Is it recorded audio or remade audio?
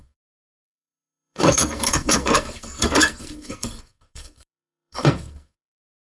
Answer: remade